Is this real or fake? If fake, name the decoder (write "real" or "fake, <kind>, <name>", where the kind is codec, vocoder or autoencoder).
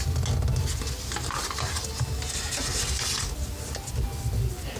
real